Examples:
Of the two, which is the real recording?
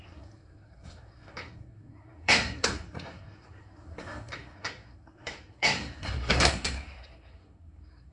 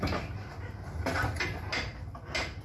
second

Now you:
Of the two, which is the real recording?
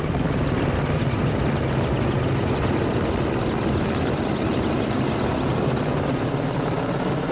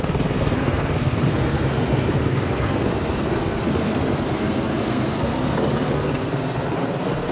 first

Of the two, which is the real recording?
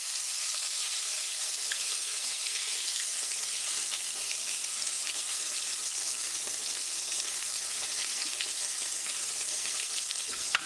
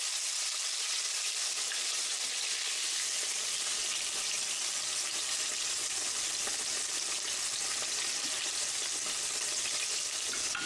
second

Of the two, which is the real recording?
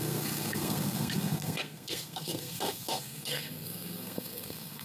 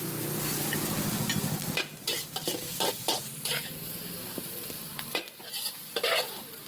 second